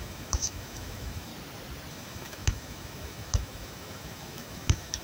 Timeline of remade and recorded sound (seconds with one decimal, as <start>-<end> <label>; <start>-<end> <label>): 0.0-1.3 remade; 1.3-1.9 recorded; 1.9-5.0 remade